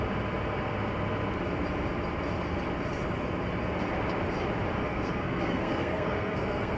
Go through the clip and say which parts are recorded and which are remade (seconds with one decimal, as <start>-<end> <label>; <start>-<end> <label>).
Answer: 0.0-4.8 recorded; 4.8-6.8 remade